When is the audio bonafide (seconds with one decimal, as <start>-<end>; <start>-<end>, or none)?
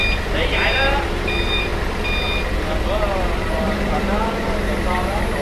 0.0-0.5; 1.7-3.5